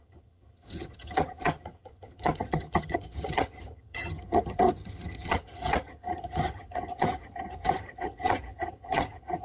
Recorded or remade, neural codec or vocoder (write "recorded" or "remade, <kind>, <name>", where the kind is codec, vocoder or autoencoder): remade, vocoder, HiFi-GAN